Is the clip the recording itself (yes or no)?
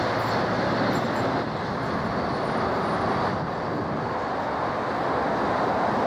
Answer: yes